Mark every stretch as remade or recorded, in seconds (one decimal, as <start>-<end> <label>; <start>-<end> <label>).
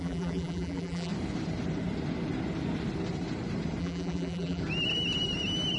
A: 0.0-1.1 remade; 1.1-3.8 recorded; 3.8-4.6 remade; 4.6-5.8 recorded